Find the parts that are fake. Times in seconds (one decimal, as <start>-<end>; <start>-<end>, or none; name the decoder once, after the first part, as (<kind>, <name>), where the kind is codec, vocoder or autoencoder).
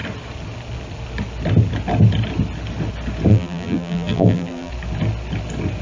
3.3-4.7 (vocoder, BigVGAN v2)